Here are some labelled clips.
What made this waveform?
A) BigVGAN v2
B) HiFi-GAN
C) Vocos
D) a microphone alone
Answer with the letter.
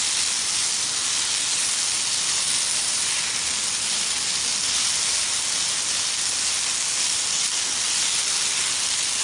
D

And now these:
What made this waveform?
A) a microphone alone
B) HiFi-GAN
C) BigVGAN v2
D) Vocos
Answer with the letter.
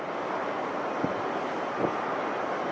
A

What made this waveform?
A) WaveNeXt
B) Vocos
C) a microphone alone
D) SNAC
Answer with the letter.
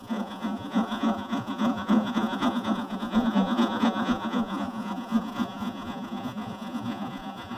B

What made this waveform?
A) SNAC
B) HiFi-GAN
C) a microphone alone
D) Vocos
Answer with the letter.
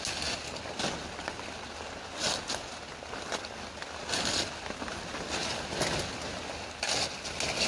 C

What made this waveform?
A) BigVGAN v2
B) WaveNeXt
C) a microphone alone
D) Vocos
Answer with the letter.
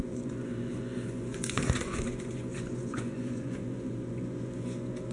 D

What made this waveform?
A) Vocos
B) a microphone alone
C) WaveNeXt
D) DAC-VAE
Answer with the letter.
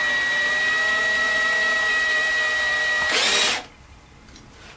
B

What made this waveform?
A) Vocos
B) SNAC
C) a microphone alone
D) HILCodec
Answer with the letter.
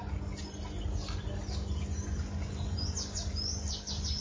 C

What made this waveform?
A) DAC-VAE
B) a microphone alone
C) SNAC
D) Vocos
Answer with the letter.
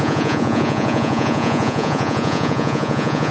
D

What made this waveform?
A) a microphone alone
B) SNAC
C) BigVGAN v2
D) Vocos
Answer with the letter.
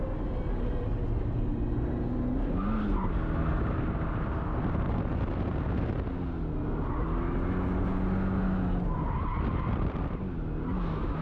A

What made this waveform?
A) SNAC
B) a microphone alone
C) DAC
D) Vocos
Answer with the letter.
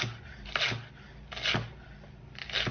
B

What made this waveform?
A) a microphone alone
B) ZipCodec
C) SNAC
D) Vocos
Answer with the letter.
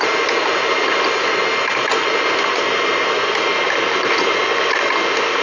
A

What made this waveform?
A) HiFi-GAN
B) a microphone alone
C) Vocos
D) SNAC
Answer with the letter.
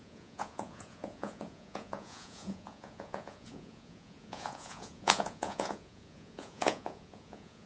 C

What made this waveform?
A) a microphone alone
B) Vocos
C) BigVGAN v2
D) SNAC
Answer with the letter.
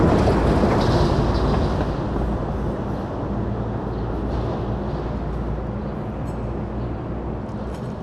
A